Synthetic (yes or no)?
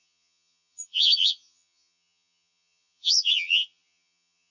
yes